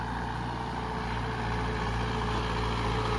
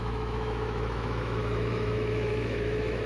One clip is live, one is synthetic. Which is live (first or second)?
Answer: first